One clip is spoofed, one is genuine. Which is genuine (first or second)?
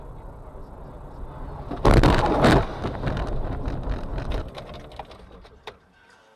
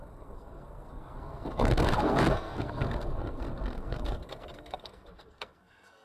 first